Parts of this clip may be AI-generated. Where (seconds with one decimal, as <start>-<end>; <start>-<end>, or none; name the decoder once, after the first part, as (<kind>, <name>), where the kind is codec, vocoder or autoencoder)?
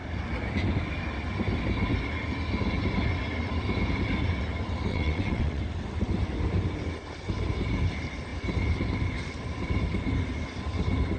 4.9-5.6 (vocoder, WaveNeXt)